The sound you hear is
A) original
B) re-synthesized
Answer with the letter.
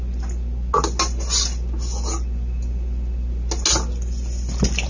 A